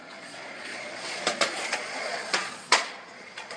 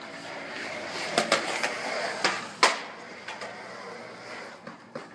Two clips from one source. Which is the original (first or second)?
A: second